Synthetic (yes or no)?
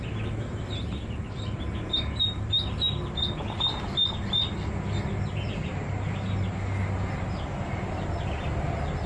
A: no